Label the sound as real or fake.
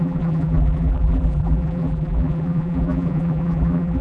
fake